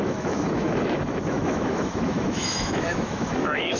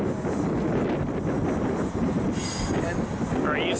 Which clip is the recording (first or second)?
second